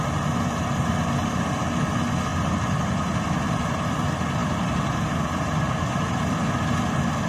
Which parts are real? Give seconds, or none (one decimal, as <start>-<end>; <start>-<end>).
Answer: 0.0-7.3